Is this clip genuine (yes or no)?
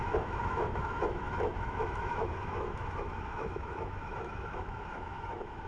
no